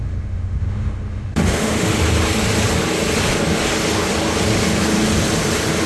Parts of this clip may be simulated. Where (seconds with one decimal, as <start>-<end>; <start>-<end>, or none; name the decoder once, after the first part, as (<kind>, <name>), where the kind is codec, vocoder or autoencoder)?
0.0-2.0 (autoencoder, DAC-VAE)